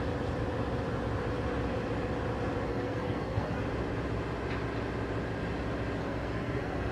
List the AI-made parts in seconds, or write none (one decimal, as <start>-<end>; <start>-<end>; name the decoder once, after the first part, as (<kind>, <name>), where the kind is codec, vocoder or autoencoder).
2.7-3.6 (codec, SNAC); 6.0-6.9